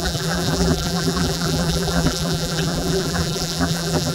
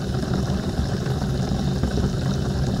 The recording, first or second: second